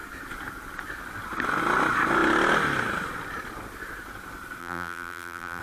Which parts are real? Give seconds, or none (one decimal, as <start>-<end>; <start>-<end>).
0.0-4.6